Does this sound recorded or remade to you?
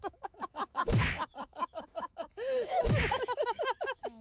remade